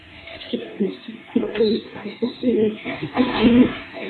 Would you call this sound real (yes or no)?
no